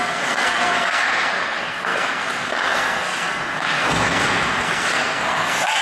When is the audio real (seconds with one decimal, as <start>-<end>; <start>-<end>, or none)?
none